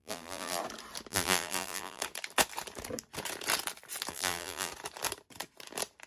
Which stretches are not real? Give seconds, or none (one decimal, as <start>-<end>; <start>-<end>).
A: 0.0-0.6; 1.1-2.0; 4.1-4.7